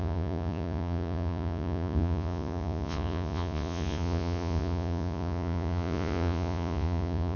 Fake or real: fake